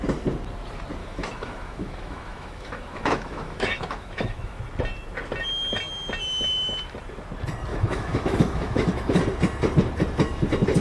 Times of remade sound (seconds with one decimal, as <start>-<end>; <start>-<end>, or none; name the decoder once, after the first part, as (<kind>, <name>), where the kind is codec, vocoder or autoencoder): 1.0-4.6 (autoencoder, DAC-VAE); 7.7-9.2